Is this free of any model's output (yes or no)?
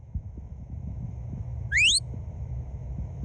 no